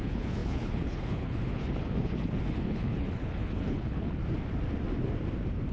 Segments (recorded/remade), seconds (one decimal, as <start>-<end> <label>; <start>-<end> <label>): 0.0-4.2 remade; 4.2-5.7 recorded